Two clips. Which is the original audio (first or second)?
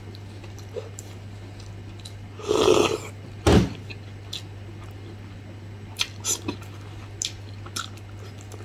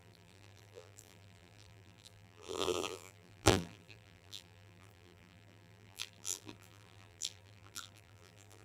first